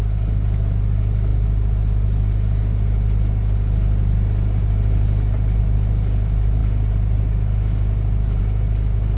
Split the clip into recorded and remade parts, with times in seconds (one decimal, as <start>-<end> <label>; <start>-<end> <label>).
0.0-9.2 recorded